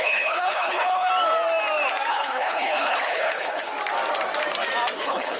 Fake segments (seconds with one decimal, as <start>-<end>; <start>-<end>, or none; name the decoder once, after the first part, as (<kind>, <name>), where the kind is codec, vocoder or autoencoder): 0.0-1.1 (codec, HILCodec); 2.1-3.7; 5.0-5.4